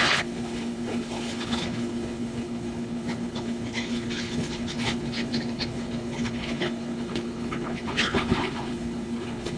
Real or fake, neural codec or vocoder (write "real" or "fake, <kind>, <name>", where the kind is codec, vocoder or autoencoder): fake, codec, HILCodec